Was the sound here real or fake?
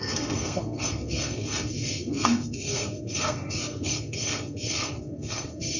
fake